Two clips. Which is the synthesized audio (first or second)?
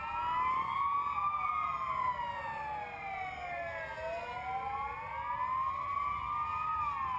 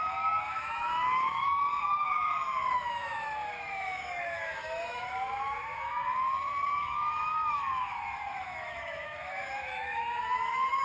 second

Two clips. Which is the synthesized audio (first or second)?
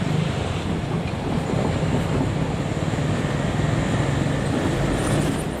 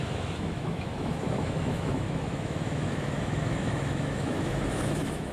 second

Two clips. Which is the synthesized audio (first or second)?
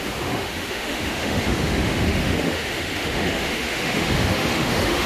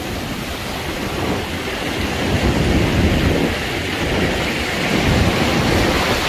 first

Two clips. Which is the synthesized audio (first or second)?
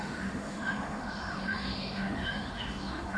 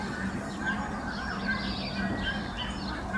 first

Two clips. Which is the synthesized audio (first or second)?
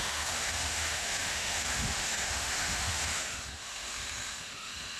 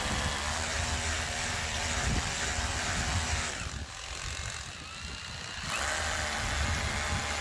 first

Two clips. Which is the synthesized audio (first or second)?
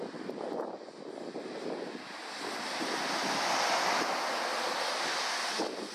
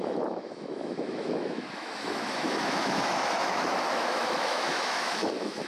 second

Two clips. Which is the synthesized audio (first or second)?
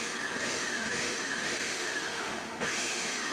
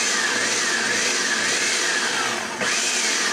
first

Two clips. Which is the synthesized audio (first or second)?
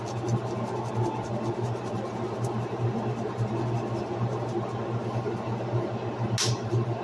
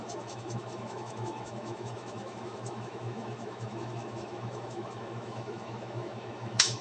second